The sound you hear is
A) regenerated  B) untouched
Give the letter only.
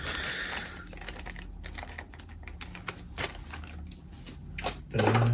B